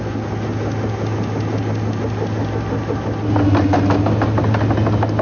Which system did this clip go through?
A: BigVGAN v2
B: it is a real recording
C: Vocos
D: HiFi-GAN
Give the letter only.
B